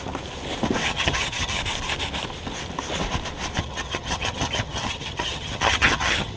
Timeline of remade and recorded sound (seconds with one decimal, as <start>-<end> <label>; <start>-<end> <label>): 0.0-0.9 recorded; 0.9-1.6 remade; 1.6-3.6 recorded; 3.6-6.4 remade

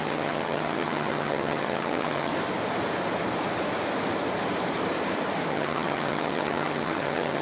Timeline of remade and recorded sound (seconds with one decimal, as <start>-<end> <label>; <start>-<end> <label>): 0.0-2.3 remade; 2.3-5.5 recorded; 5.5-7.4 remade

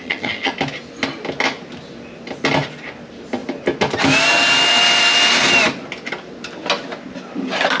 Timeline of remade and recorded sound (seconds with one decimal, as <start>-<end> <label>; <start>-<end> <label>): 0.0-0.5 remade; 0.5-7.8 recorded